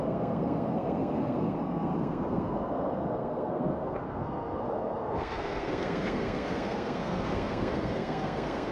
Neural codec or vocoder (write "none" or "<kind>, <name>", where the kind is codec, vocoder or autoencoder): codec, SNAC